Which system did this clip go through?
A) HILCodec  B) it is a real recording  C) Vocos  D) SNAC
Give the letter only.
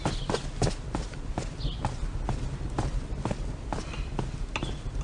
B